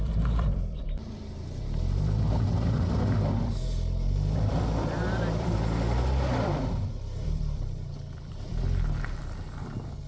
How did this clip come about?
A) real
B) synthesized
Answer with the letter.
B